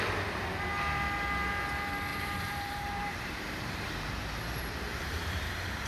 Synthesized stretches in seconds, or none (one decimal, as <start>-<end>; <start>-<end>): 2.1-5.9